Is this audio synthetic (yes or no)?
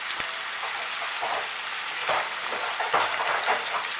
no